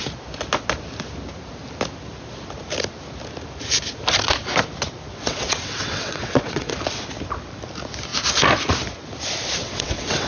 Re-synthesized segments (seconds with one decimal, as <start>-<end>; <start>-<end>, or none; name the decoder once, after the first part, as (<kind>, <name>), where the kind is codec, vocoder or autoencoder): 5.1-6.7 (vocoder, WaveNeXt); 9.6-10.3